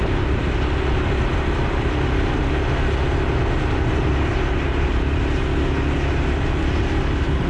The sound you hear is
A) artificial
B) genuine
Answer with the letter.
B